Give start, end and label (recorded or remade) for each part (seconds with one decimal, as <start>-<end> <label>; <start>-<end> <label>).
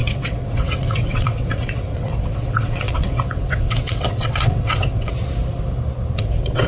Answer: 0.0-5.2 remade; 5.2-6.2 recorded; 6.2-6.7 remade